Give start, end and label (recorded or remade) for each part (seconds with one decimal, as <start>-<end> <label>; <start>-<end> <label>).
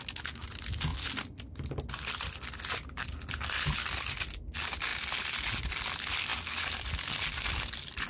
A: 0.0-0.9 recorded; 0.9-4.0 remade; 4.0-8.1 recorded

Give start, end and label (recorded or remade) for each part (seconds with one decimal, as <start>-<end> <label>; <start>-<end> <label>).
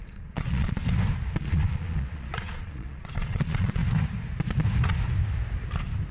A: 0.0-0.8 remade; 0.8-1.4 recorded; 1.4-3.8 remade; 3.8-6.1 recorded